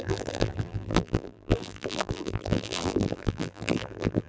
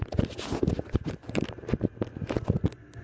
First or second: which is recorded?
second